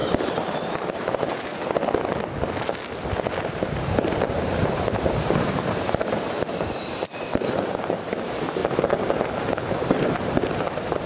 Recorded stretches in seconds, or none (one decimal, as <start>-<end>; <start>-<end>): 1.5-3.5; 8.6-9.9